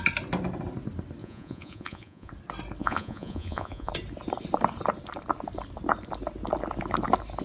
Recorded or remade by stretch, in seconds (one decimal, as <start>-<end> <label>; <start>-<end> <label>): 0.0-1.2 recorded; 1.2-2.3 remade; 2.3-2.8 recorded; 2.8-3.9 remade; 3.9-7.4 recorded